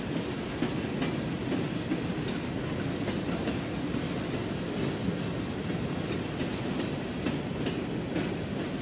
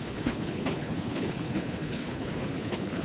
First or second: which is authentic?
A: first